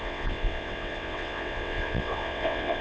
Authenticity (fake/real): fake